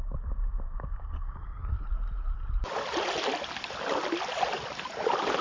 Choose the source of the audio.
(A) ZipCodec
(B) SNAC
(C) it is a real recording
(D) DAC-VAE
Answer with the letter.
C